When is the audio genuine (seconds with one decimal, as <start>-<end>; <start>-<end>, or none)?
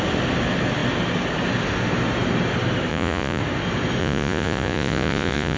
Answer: 0.0-2.9; 3.4-4.0